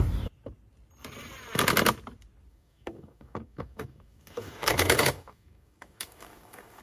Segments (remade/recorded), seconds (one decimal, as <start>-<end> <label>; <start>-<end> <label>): 0.0-2.5 recorded; 2.5-6.8 remade